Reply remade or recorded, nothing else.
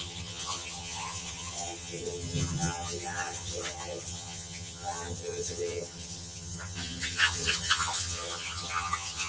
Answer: remade